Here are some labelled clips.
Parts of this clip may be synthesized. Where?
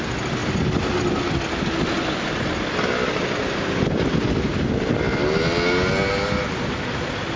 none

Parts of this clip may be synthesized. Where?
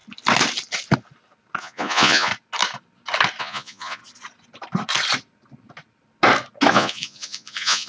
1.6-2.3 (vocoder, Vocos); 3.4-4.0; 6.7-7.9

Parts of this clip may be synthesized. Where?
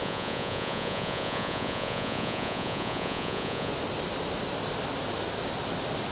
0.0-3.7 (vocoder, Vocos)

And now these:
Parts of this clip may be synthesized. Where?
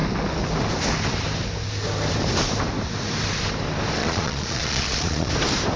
4.0-5.3 (vocoder, Vocos)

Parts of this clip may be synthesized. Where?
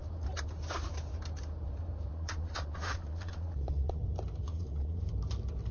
2.1-4.0 (vocoder, Vocos); 4.4-5.0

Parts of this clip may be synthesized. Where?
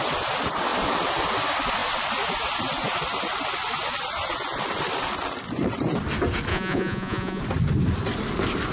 6.5-7.4 (vocoder, Vocos)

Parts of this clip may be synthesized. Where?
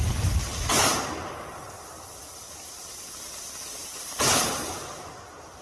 none